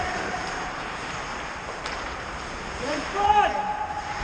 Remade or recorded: remade